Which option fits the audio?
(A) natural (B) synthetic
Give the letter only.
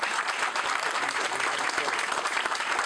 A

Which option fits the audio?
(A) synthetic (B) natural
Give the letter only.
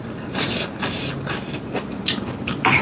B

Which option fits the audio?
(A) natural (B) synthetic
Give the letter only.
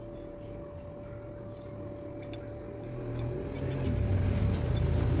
A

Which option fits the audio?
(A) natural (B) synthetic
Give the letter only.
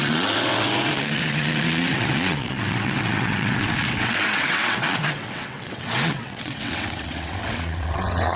B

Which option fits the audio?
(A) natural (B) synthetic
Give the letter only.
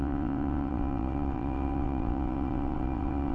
B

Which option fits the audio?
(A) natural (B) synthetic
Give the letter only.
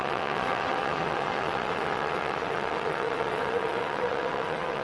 B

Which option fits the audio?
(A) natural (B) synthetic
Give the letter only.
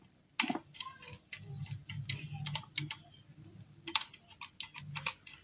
A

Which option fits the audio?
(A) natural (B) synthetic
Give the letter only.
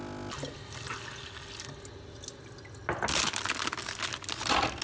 A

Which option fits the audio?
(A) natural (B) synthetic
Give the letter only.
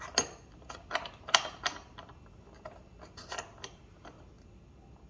A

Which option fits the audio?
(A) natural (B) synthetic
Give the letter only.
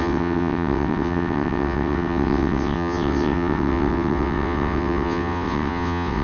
B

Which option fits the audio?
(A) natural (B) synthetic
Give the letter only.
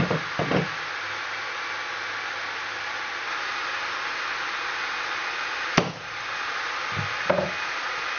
A